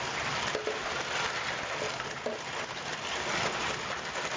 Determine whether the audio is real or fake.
real